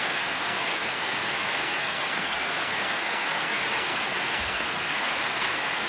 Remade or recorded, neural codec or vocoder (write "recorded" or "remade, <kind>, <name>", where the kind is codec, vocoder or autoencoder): remade, codec, SNAC